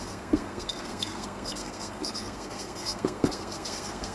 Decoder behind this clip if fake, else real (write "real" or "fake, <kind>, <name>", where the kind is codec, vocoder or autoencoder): fake, codec, SNAC